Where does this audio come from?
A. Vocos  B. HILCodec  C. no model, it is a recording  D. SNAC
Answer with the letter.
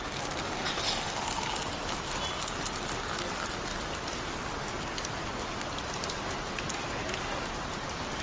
C